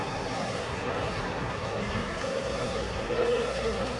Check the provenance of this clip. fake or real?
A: fake